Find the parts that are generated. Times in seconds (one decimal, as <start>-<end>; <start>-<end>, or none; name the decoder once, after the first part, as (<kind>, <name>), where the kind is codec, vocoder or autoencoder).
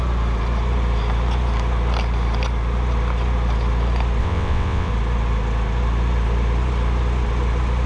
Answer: 4.2-4.9 (vocoder, WaveNeXt)